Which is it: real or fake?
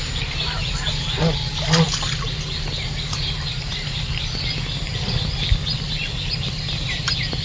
fake